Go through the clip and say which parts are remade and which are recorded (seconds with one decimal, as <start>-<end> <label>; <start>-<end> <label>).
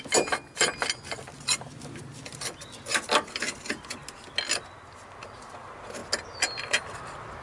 0.0-7.4 recorded